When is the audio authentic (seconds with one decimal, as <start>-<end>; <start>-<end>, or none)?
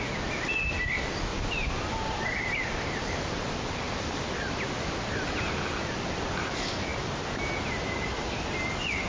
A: 0.0-1.3; 5.4-9.1